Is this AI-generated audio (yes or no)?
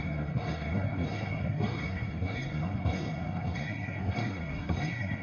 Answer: yes